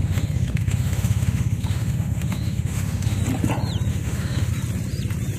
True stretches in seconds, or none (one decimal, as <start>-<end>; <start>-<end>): 3.2-3.9; 4.5-5.4